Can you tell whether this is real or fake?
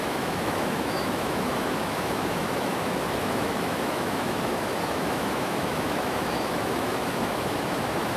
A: fake